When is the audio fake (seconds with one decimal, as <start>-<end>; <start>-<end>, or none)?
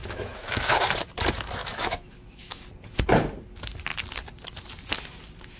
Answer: 0.0-0.8; 1.6-2.6